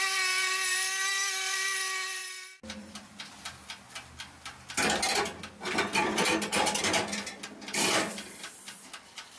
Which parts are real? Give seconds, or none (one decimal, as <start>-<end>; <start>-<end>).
0.0-9.4